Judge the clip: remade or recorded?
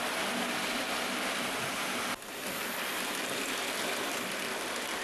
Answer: recorded